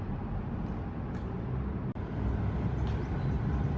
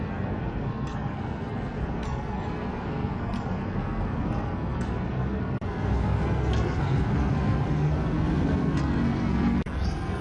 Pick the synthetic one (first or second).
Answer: second